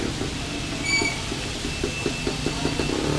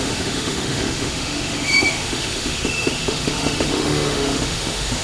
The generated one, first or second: second